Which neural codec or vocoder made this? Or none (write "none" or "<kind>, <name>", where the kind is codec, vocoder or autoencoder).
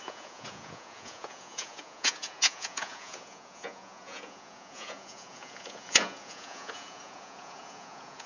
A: vocoder, Vocos